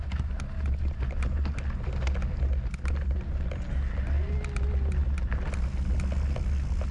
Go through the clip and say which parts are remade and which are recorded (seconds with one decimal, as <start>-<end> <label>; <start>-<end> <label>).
0.0-6.9 recorded

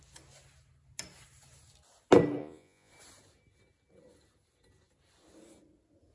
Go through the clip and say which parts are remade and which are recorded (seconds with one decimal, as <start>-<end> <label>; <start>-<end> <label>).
0.0-2.4 recorded; 2.4-2.9 remade; 2.9-6.1 recorded